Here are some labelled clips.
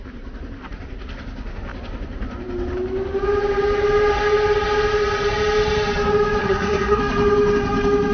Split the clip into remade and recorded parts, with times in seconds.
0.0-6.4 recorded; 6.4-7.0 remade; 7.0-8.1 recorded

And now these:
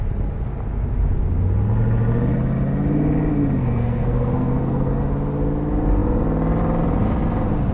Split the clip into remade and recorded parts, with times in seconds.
0.0-3.6 recorded; 3.6-5.0 remade; 5.0-7.7 recorded

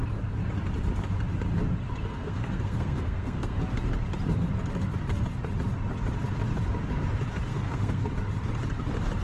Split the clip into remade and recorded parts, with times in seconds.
0.0-2.1 recorded; 2.1-3.6 remade; 3.6-7.5 recorded; 7.5-8.1 remade; 8.1-9.2 recorded

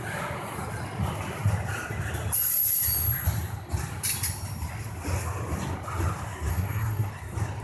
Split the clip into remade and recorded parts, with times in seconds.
0.0-6.5 recorded; 6.5-7.1 remade; 7.1-7.6 recorded

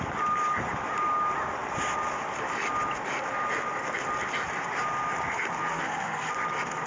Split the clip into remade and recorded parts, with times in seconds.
0.0-5.7 recorded; 5.7-6.3 remade; 6.3-6.9 recorded

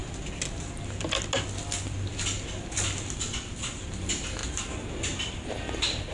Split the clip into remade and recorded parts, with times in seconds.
0.0-6.1 recorded